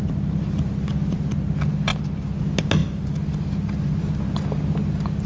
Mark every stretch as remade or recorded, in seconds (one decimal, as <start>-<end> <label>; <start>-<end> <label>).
0.0-5.3 recorded